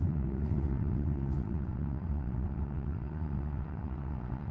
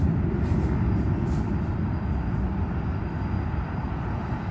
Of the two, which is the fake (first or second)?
first